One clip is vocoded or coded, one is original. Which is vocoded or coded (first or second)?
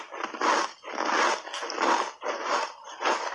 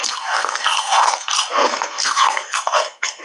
second